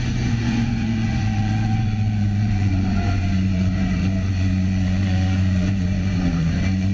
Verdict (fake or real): fake